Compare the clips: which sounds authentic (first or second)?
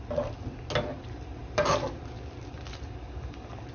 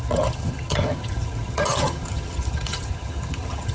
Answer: first